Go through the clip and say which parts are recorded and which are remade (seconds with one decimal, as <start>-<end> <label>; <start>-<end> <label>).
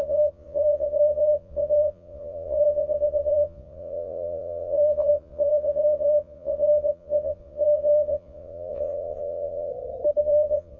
0.0-9.7 remade; 9.7-10.2 recorded; 10.2-10.8 remade